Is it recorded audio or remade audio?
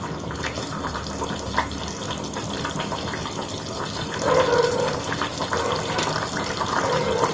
recorded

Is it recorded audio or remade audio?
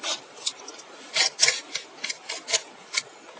recorded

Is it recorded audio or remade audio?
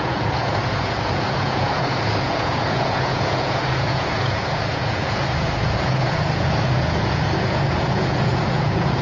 remade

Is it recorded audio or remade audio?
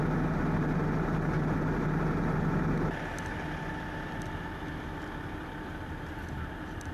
recorded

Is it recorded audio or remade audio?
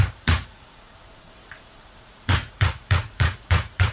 remade